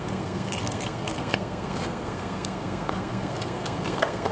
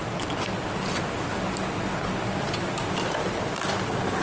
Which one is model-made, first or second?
first